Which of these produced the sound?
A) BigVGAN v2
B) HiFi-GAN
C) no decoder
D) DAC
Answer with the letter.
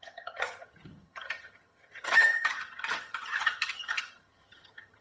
B